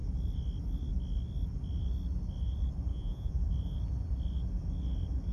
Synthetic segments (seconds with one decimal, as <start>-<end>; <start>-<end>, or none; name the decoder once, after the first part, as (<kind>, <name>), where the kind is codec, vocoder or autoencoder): 2.9-3.4 (vocoder, Vocos)